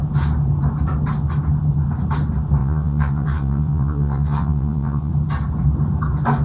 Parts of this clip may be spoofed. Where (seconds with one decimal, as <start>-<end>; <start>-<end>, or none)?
2.6-5.1